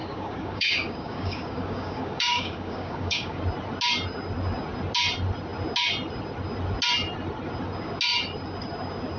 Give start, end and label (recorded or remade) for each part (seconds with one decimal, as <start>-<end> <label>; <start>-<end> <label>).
0.0-3.4 remade; 3.4-9.2 recorded